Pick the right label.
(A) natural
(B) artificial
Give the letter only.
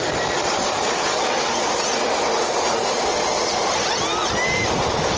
A